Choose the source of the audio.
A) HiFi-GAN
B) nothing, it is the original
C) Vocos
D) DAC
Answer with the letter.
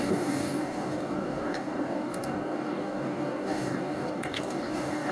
D